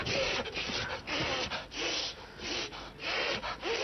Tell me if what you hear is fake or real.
real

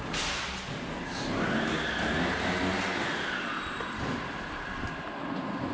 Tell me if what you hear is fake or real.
real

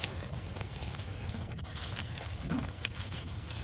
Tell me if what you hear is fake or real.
fake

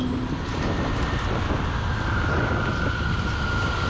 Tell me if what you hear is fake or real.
real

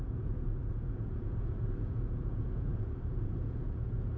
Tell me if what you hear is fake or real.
fake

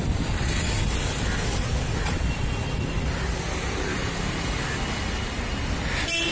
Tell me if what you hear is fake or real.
real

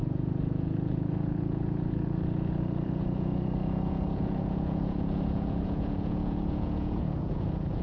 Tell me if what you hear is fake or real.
fake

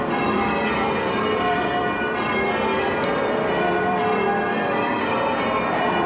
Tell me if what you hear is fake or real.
fake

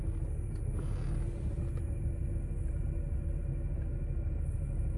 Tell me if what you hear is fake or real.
real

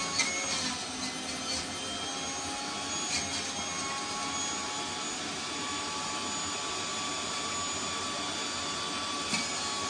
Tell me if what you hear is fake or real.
real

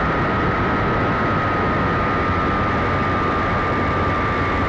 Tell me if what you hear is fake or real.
real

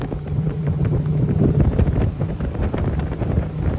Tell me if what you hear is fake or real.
fake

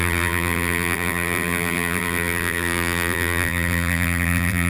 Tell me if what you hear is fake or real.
fake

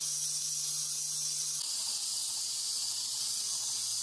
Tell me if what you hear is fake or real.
real